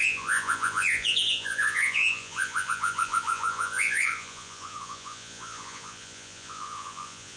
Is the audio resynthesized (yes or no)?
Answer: yes